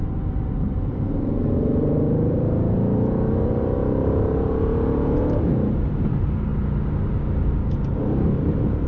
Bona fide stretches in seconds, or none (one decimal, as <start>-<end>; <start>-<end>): 6.5-8.4